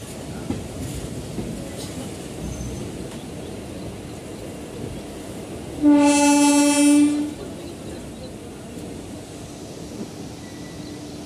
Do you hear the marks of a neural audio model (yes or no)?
no